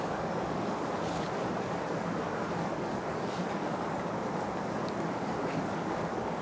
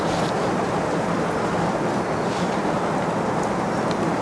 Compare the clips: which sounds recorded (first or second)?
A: second